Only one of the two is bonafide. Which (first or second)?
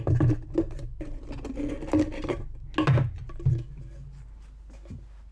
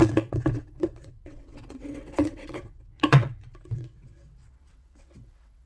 first